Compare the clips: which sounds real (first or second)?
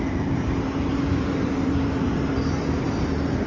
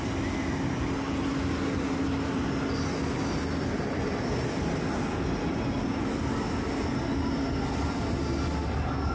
second